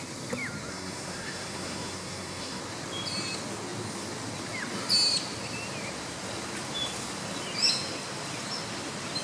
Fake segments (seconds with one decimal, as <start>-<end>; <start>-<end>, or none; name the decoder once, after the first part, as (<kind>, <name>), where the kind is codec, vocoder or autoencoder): 0.7-2.6 (codec, SNAC)

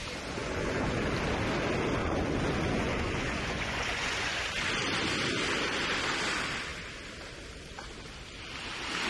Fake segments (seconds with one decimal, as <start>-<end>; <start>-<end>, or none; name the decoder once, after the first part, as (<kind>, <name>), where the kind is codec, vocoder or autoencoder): 0.4-1.0 (vocoder, Vocos); 2.0-4.4

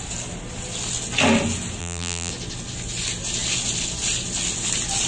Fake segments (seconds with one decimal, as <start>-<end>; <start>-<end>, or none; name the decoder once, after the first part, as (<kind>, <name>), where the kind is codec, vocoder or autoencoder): 1.8-2.3 (vocoder, BigVGAN v2)

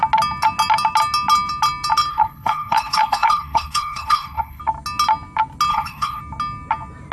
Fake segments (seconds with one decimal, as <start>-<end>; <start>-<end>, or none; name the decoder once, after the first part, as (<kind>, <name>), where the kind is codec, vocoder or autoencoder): 2.1-4.6 (codec, HILCodec); 5.7-6.2

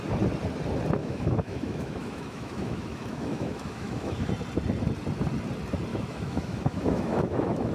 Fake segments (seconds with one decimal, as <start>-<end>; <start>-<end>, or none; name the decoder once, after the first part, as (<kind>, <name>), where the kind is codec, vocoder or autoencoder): 1.0-4.3 (autoencoder, DAC-VAE); 5.9-7.7

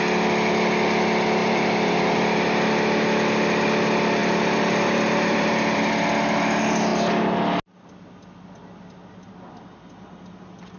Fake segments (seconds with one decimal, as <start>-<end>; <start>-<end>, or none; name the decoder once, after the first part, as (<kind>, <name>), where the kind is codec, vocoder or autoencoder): 1.4-2.2 (vocoder, BigVGAN v2); 4.2-5.9

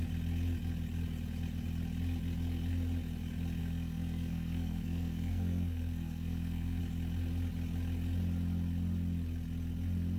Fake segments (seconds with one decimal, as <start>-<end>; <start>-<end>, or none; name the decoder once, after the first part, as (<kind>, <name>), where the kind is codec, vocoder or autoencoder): 3.6-6.8 (codec, SNAC)

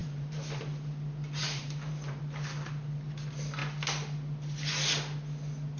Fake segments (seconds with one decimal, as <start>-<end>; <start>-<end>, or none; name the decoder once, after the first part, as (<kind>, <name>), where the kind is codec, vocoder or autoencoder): 0.0-0.6 (vocoder, BigVGAN v2); 1.4-2.2